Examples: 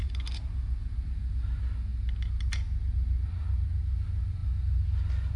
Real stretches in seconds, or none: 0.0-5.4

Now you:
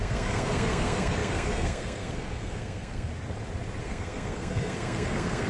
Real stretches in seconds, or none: 3.1-3.8

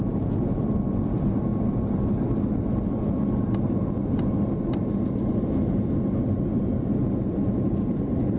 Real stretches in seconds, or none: 0.0-8.4

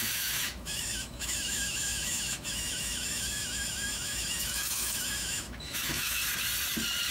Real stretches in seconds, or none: 6.2-7.1

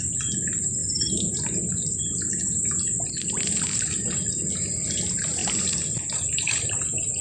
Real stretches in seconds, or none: 0.0-7.2

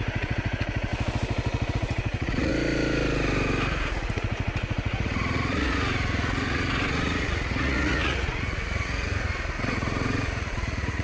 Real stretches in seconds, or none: 0.9-1.7; 2.5-3.8; 9.1-9.6

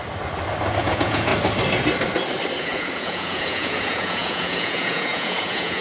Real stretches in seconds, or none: 0.0-0.8; 1.3-2.6